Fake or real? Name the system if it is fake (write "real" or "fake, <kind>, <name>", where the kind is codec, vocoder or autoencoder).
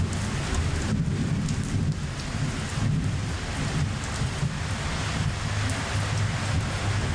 real